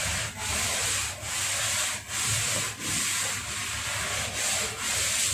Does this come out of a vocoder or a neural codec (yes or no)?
no